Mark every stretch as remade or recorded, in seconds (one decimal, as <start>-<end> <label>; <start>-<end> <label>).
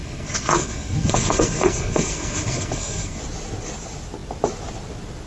0.0-3.2 remade; 3.2-5.3 recorded